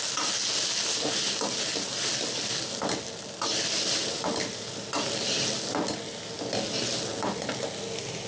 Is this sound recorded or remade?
recorded